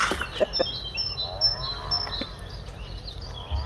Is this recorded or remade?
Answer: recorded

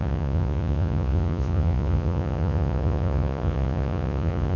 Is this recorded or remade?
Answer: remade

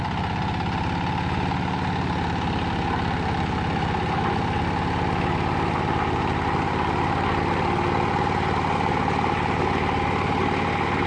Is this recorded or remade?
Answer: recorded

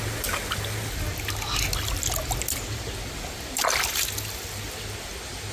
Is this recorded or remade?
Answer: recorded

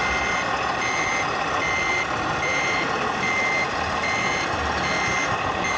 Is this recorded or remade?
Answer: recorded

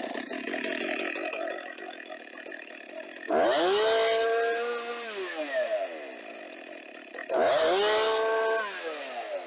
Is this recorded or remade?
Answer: recorded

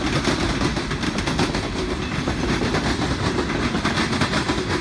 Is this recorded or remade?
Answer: recorded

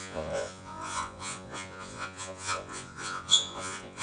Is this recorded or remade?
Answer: remade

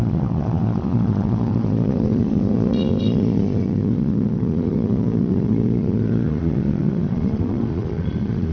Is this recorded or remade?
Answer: remade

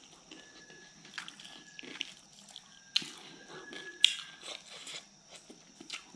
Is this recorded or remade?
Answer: recorded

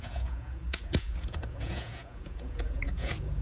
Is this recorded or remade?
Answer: remade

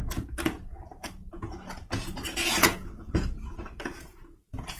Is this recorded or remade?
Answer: remade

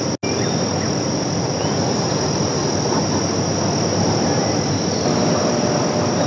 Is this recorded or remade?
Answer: recorded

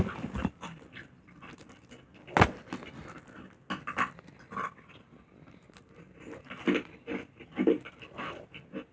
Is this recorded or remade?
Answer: recorded